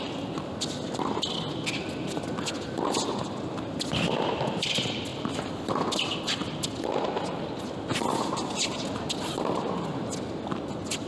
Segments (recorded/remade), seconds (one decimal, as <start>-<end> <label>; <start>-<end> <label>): 0.0-11.1 recorded